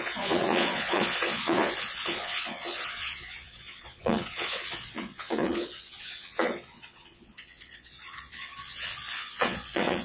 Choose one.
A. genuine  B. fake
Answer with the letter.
B